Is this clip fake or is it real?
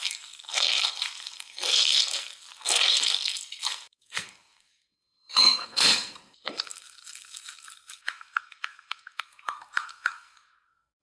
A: fake